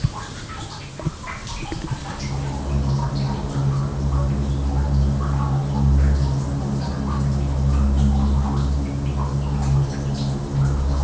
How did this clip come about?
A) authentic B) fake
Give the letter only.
A